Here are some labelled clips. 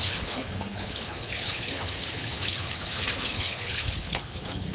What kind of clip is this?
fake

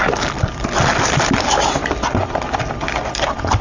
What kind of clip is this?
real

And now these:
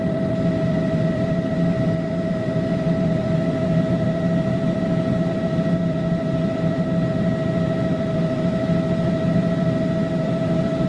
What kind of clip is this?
fake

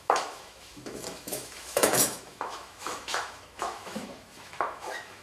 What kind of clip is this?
fake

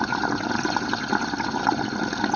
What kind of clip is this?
real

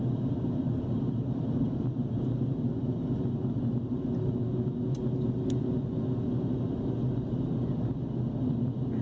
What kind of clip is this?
real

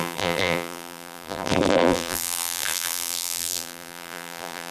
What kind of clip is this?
fake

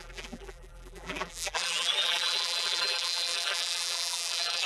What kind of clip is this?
fake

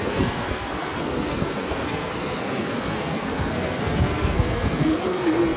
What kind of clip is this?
fake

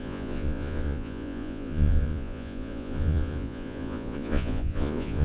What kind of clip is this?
fake